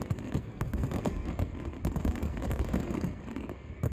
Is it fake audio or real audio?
fake